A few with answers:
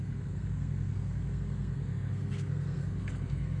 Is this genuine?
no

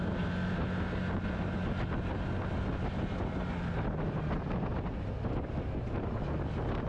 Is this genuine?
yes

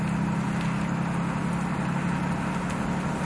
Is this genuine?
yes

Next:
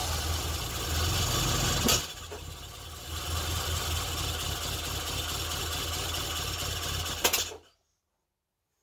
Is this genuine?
yes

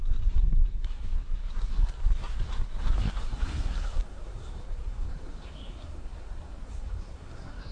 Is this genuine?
no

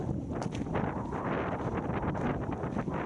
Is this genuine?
yes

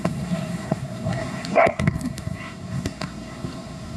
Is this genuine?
no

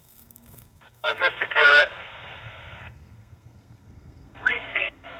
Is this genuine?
no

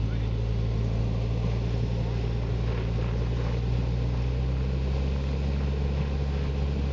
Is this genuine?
yes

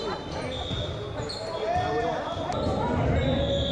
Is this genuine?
yes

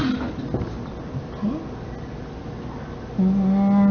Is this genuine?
yes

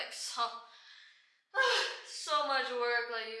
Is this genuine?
yes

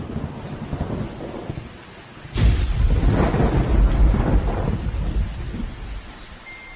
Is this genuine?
yes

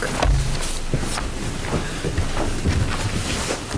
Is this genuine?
yes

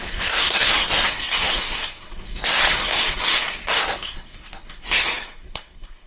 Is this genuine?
no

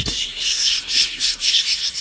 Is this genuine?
no